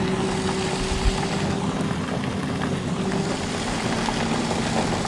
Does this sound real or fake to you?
real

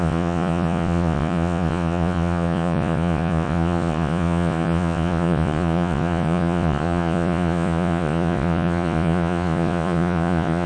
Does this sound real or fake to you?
fake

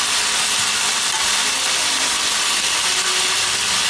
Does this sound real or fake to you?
real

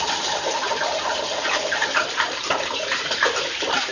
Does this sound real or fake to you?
fake